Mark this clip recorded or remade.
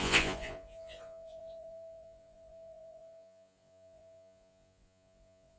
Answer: remade